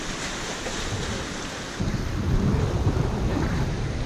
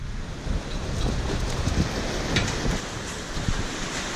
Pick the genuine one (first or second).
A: second